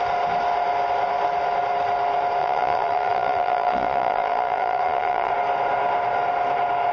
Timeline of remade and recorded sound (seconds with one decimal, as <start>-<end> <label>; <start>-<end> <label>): 0.0-2.4 recorded; 2.4-5.3 remade; 5.3-6.9 recorded